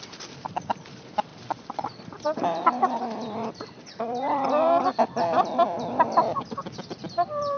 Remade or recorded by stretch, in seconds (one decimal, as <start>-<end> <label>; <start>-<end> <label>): 0.0-7.6 remade